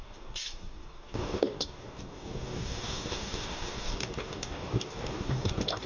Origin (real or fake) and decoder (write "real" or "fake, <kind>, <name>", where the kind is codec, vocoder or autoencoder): fake, codec, DAC